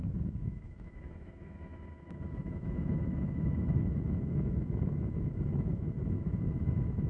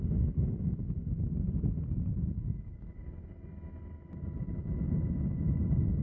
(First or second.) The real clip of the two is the second